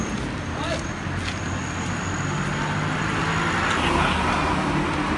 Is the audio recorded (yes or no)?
yes